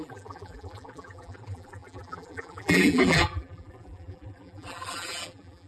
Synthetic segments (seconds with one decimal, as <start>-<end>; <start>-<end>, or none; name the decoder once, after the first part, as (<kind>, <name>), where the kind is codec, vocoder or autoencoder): 0.0-5.7 (vocoder, BigVGAN v2)